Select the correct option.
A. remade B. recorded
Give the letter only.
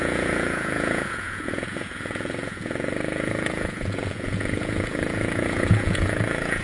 A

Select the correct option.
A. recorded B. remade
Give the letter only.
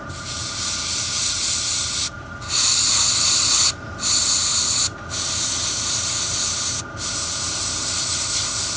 A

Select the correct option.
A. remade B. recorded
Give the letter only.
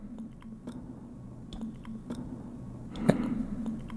B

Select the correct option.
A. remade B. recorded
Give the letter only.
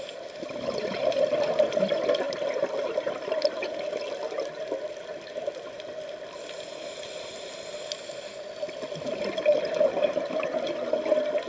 B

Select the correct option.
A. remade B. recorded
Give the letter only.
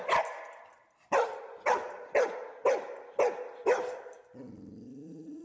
B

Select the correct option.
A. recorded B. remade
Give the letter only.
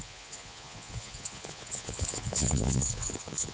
B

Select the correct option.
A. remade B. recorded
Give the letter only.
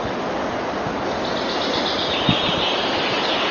B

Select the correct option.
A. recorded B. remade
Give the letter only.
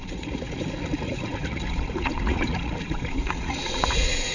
B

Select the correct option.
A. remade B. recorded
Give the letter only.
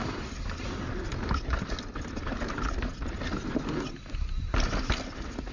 B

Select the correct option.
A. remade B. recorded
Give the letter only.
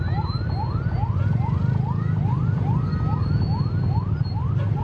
B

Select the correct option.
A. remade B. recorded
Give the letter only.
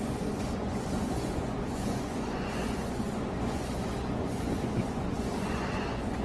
A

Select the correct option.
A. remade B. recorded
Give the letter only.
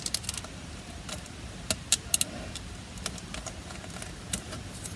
B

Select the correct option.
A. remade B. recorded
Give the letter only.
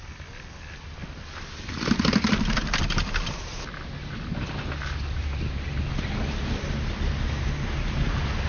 B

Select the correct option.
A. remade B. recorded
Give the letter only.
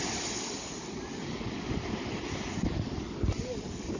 B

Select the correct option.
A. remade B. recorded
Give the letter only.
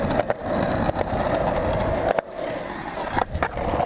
B